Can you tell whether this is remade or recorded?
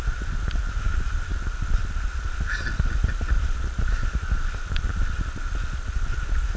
recorded